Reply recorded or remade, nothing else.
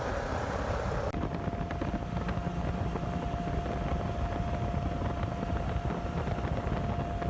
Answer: recorded